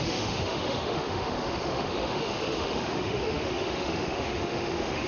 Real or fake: fake